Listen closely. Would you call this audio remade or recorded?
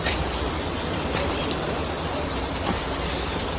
recorded